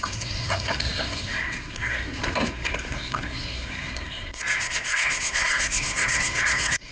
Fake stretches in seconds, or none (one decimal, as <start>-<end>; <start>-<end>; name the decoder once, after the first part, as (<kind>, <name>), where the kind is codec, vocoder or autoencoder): 0.0-6.9 (codec, SNAC)